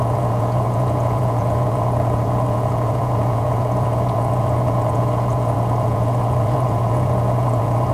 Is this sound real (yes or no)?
no